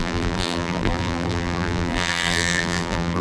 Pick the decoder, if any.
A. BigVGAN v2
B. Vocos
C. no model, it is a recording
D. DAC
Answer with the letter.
A